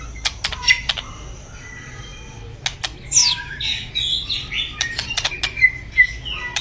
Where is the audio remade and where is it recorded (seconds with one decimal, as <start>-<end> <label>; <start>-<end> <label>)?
0.0-3.2 recorded; 3.2-3.9 remade; 3.9-6.6 recorded